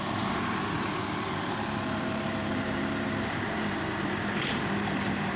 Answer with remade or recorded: remade